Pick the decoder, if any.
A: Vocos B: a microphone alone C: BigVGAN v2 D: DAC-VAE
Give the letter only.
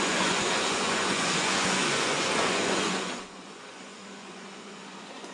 A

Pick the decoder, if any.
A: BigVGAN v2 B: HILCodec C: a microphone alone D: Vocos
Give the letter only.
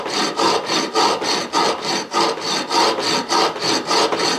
C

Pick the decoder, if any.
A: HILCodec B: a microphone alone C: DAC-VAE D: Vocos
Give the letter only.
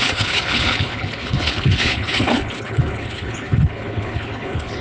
A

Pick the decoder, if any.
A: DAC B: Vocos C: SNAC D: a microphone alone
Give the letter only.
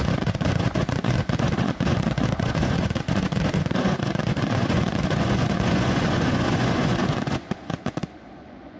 B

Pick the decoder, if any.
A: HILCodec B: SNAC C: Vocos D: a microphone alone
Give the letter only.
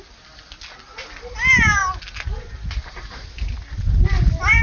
D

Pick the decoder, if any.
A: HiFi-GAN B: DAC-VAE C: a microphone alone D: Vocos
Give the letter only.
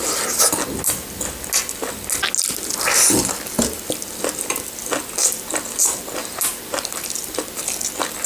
C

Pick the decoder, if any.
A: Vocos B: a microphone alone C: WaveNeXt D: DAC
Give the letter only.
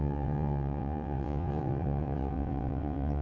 C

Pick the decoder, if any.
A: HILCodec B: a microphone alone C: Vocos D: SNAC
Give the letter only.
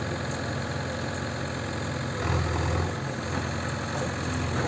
B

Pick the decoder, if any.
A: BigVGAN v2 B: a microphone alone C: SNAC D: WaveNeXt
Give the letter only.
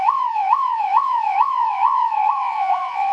D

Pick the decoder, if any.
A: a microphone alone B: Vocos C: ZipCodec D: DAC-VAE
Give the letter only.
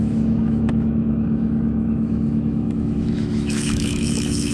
D